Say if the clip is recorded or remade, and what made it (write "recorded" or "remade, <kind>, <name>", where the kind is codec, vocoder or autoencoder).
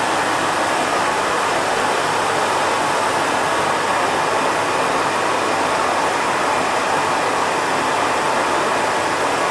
recorded